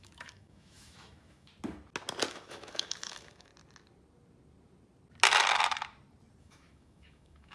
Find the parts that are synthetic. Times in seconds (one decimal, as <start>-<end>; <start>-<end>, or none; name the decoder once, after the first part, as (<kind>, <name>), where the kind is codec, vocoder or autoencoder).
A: 0.0-1.5 (autoencoder, DAC-VAE); 2.3-3.5; 6.4-7.5